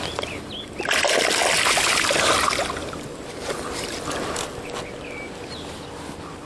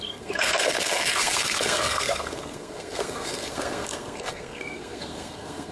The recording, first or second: first